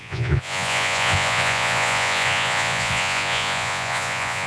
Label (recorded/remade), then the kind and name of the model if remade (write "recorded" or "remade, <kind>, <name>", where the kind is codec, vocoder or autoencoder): remade, vocoder, Vocos